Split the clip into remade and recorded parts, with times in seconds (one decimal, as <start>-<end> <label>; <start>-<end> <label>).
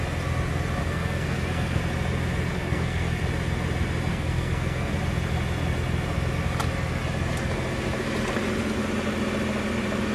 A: 0.0-0.8 recorded; 0.8-1.8 remade; 1.8-2.5 recorded; 2.5-3.2 remade; 3.2-4.1 recorded; 4.1-4.9 remade; 4.9-10.1 recorded